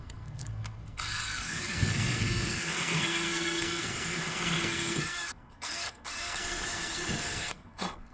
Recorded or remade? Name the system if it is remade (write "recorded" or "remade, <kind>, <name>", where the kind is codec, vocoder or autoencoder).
remade, codec, SNAC